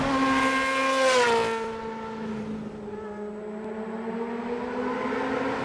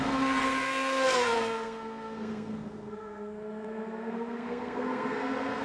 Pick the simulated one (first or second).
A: second